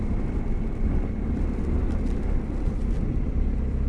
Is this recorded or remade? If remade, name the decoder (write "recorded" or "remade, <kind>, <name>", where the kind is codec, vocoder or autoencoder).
remade, vocoder, BigVGAN v2